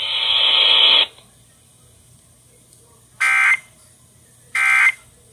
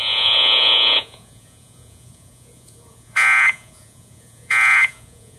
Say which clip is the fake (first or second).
second